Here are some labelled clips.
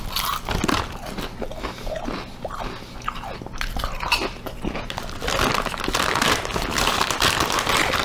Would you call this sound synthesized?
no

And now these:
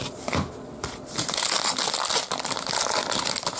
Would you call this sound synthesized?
no